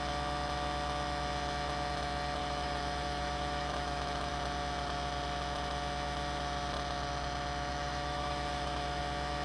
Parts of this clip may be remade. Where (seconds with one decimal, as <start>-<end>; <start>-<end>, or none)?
2.4-4.3; 7.7-9.0